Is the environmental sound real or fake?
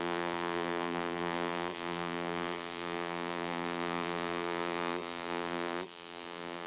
fake